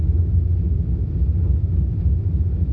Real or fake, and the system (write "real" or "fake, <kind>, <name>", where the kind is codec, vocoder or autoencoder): real